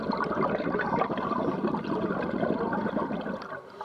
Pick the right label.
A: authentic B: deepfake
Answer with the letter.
A